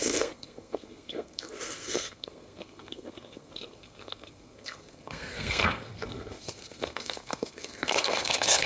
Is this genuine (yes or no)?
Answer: no